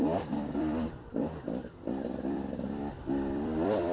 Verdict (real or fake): fake